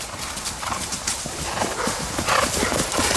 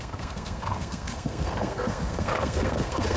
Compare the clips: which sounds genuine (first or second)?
first